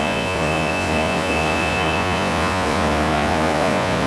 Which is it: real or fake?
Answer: fake